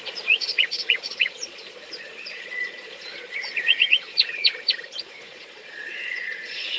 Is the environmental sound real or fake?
fake